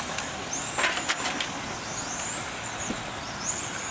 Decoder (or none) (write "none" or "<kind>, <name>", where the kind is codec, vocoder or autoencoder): none